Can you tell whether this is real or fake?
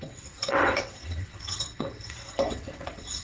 fake